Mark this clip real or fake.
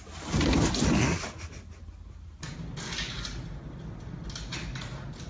real